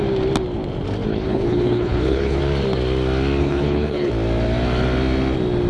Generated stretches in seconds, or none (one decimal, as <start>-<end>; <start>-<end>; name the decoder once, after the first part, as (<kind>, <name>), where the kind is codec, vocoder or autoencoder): 1.1-2.4 (codec, HILCodec); 3.4-4.1